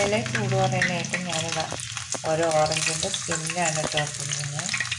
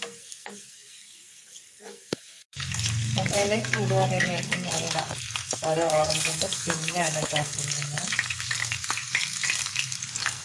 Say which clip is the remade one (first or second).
second